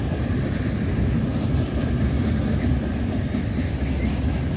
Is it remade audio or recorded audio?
recorded